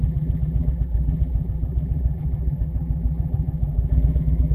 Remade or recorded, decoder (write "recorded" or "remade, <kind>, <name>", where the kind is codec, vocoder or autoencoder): remade, vocoder, BigVGAN v2